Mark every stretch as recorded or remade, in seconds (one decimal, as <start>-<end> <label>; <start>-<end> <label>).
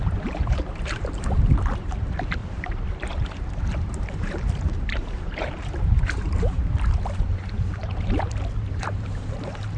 0.0-9.8 remade